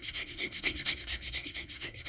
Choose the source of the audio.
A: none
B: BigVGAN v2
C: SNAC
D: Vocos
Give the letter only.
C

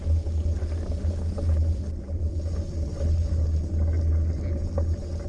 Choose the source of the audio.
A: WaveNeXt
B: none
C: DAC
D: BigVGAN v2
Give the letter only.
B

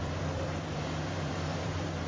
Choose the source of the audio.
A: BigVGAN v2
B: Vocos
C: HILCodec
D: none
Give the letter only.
A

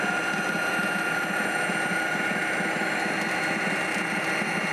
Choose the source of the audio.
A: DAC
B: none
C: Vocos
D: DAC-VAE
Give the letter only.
B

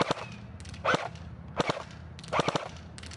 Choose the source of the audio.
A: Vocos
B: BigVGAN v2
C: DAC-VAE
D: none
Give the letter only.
D